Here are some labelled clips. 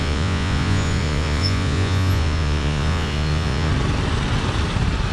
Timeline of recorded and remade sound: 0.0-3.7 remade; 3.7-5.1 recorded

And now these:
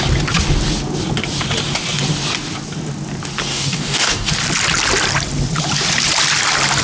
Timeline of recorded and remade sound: 0.0-3.5 recorded; 3.5-4.3 remade; 4.3-6.8 recorded